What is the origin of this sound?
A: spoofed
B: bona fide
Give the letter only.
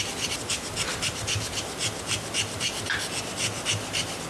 B